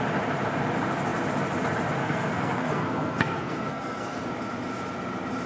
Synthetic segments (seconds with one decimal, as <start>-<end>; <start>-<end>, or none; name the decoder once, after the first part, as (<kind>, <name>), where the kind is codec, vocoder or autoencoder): 2.0-4.3 (codec, SNAC)